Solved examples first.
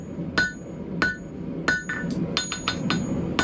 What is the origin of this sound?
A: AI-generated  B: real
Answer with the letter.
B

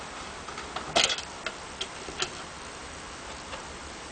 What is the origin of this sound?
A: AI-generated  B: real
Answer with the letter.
B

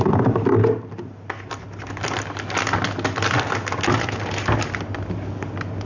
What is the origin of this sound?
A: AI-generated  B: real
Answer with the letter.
B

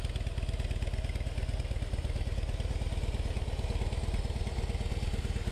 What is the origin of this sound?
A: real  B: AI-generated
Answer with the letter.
A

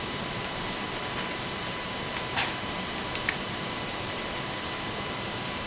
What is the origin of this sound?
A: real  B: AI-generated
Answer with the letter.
B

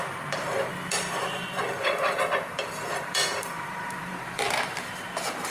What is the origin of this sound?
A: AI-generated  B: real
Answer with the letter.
A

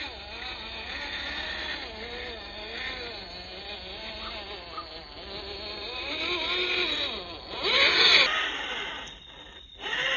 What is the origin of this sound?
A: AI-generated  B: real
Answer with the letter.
B